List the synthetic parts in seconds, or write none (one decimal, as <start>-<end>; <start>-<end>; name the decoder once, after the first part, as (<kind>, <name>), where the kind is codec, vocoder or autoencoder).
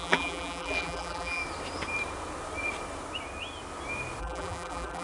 0.0-1.4 (vocoder, BigVGAN v2); 4.2-5.0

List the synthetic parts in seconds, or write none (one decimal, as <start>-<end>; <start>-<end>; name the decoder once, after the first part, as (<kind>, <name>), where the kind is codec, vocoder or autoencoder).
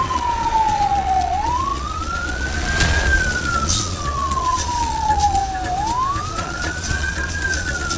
0.0-5.4 (vocoder, Vocos); 6.2-8.0